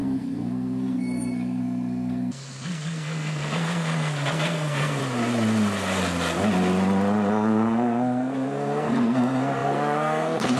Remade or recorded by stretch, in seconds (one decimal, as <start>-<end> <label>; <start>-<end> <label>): 0.0-5.0 remade; 5.0-7.3 recorded; 7.3-10.6 remade